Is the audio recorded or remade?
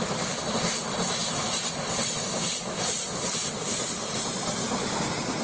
recorded